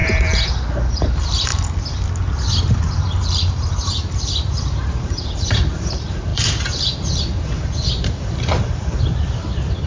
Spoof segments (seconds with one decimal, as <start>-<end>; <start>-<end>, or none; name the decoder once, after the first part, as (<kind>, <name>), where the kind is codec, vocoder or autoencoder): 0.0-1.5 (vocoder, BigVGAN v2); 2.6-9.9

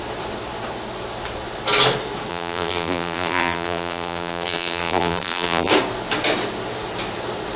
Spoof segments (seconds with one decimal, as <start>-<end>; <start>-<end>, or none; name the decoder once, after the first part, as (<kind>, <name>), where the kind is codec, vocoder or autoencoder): 2.3-5.7 (vocoder, BigVGAN v2)

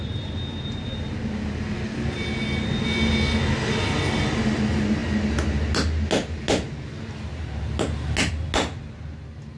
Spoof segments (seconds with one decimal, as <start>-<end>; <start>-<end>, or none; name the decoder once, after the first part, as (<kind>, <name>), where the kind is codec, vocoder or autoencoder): none